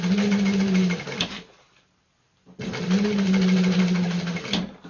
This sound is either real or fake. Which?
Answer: real